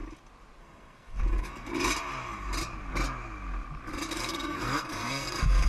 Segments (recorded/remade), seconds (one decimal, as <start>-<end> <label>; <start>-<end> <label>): 0.0-0.6 recorded; 0.6-1.7 remade; 1.7-4.1 recorded; 4.1-5.7 remade